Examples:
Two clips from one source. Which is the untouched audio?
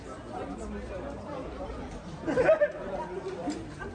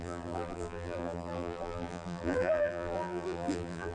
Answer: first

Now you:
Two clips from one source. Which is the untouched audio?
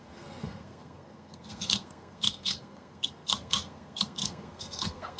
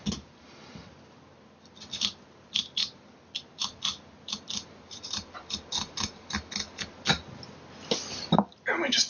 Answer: second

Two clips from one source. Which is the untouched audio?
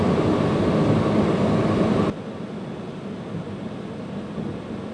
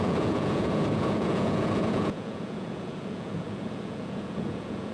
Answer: first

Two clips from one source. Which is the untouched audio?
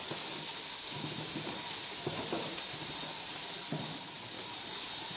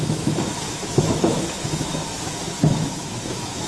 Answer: first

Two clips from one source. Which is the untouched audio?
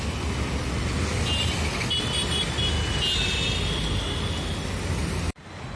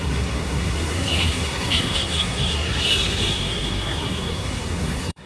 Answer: first